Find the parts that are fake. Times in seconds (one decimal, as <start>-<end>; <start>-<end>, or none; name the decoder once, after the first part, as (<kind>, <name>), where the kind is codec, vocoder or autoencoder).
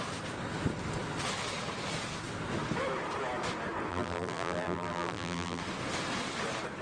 3.9-5.6 (vocoder, BigVGAN v2)